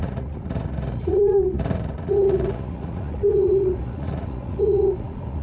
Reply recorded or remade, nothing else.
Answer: remade